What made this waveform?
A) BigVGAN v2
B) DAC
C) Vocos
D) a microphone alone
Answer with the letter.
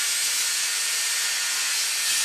D